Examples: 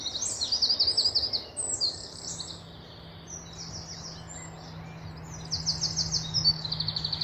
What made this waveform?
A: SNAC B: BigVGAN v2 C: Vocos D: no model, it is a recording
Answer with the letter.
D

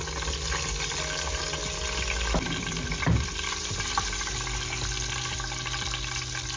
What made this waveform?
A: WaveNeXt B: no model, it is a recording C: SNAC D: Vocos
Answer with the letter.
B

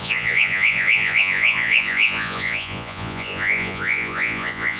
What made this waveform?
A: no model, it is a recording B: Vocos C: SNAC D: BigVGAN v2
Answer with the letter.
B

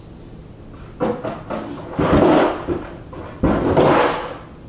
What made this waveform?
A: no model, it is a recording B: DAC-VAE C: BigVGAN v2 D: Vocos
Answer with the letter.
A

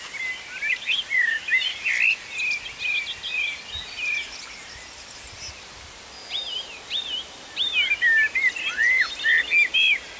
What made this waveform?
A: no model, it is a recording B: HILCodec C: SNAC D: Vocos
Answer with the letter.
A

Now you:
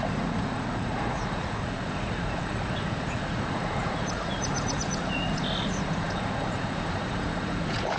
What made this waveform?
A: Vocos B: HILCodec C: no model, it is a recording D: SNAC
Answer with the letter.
A